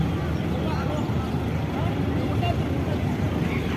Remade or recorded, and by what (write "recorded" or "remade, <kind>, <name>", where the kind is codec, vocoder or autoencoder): recorded